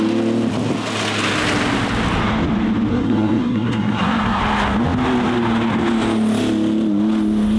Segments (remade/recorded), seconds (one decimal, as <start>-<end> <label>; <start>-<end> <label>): 0.0-2.9 recorded; 2.9-4.4 remade; 4.4-7.6 recorded